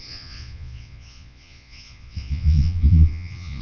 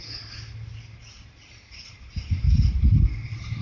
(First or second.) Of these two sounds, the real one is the second